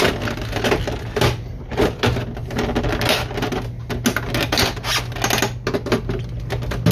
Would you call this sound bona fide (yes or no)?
yes